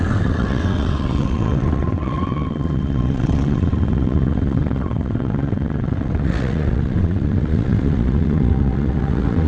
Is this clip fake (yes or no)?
yes